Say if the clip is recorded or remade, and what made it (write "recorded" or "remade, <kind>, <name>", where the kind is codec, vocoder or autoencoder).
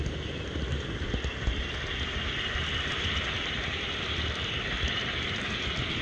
recorded